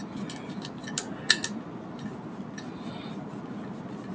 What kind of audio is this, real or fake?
real